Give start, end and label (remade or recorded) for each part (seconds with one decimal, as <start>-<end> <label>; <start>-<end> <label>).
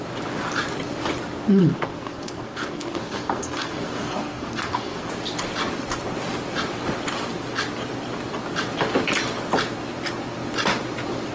0.0-1.6 recorded; 1.6-5.1 remade; 5.1-11.3 recorded